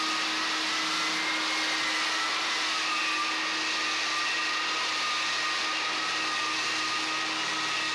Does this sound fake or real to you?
real